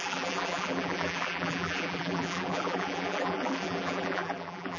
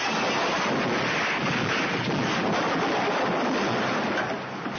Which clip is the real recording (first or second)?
second